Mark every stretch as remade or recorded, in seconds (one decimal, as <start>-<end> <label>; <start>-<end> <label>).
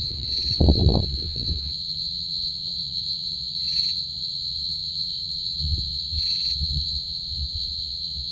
0.0-8.3 remade